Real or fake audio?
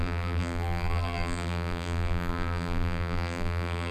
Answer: fake